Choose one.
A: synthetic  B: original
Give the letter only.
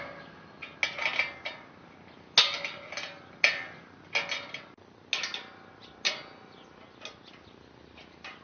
B